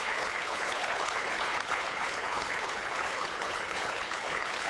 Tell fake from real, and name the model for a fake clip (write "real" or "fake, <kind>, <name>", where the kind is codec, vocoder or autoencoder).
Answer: fake, codec, HILCodec